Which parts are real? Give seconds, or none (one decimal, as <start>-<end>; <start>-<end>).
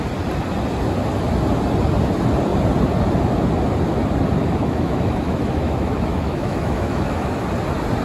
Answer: 0.0-4.4; 7.4-8.0